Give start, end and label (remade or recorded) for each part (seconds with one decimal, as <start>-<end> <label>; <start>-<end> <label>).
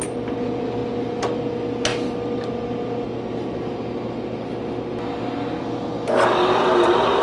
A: 0.0-7.2 recorded